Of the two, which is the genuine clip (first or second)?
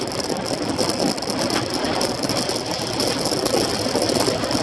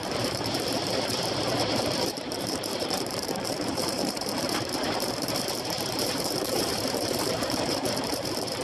first